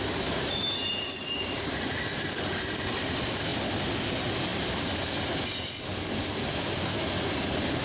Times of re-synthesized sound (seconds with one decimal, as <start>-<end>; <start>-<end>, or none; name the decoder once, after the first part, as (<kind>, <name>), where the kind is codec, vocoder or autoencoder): none